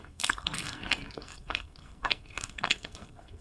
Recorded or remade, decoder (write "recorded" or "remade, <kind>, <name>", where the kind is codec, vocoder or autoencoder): remade, codec, SNAC